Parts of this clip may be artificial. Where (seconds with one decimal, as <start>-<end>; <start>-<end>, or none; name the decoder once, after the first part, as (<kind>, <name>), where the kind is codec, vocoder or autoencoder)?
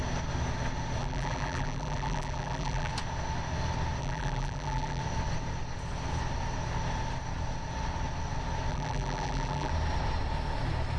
1.0-2.9 (vocoder, BigVGAN v2); 4.0-5.0; 8.7-9.7